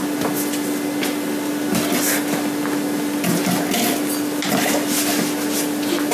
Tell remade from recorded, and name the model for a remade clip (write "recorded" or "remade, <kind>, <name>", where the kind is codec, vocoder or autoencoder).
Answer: recorded